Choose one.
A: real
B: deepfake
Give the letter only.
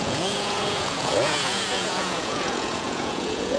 B